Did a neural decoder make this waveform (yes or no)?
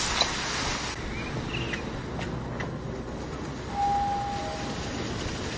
no